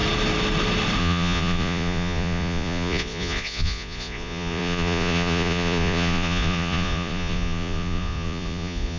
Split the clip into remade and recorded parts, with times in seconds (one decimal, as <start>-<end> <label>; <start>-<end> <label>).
0.0-1.0 recorded; 1.0-9.0 remade